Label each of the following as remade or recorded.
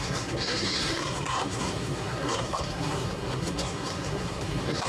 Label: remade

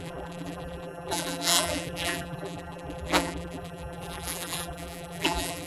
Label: remade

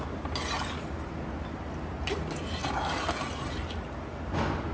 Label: recorded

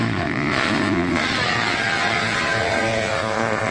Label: remade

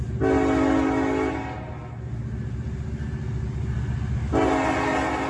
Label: recorded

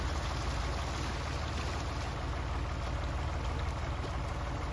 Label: recorded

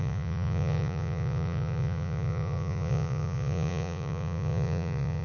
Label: remade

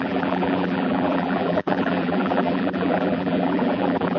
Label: remade